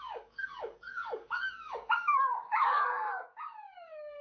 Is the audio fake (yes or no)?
yes